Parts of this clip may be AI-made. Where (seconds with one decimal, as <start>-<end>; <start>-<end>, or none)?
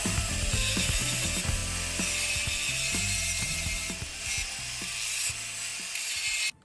none